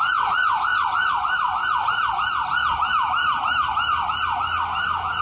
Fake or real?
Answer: real